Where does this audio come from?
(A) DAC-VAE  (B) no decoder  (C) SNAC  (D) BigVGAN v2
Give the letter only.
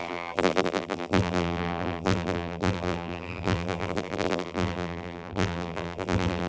D